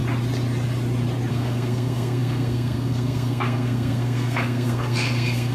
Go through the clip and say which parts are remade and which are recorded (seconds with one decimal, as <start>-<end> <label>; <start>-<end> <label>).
0.0-1.3 recorded; 1.3-5.5 remade

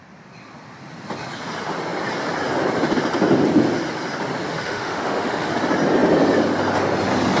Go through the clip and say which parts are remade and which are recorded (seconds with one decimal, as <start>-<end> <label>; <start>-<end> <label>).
0.0-4.5 recorded; 4.5-5.5 remade; 5.5-7.4 recorded